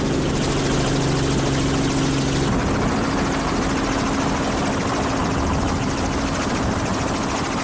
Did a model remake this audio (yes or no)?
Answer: no